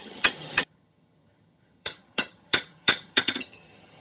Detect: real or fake fake